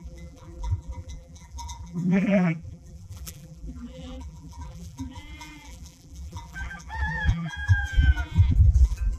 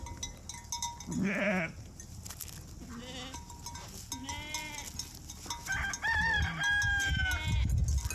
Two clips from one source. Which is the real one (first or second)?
second